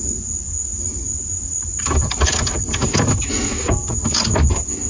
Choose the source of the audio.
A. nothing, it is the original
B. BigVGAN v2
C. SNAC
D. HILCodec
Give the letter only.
A